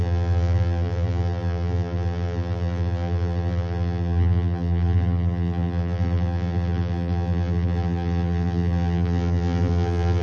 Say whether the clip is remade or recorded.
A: remade